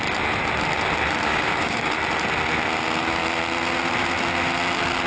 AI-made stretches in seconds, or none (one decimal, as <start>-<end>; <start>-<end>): 1.3-1.9